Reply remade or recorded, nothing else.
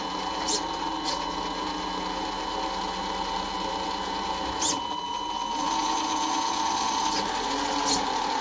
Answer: recorded